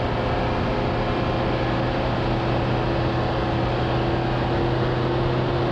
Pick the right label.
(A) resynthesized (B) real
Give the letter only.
B